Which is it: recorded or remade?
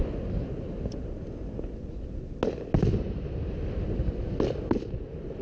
recorded